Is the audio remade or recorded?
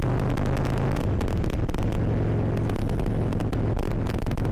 recorded